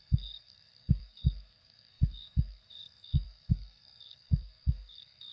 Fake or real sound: fake